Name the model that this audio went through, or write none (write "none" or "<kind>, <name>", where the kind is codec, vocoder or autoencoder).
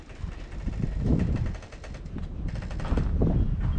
none